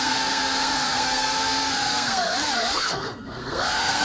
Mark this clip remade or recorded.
remade